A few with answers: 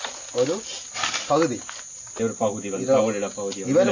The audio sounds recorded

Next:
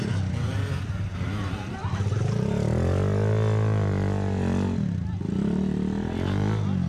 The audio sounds recorded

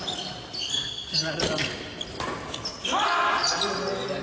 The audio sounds recorded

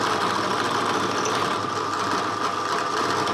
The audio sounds recorded